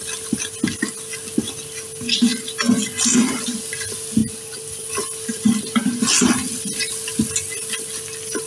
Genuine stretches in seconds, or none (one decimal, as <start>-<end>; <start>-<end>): 0.0-8.5